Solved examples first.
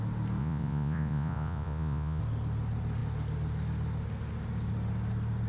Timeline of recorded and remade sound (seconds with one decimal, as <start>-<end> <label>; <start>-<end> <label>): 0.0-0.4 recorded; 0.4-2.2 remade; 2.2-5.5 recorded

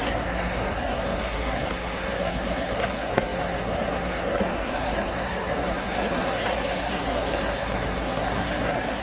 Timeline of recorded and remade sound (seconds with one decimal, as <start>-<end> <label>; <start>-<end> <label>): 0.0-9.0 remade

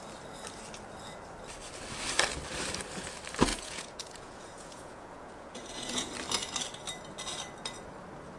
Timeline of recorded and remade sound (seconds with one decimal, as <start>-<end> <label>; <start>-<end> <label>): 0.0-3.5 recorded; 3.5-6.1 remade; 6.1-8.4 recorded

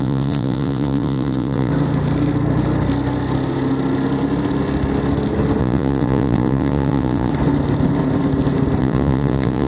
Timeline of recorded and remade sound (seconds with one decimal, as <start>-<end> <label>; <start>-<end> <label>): 0.0-1.7 remade; 1.7-5.6 recorded; 5.6-7.3 remade; 7.3-8.8 recorded; 8.8-9.7 remade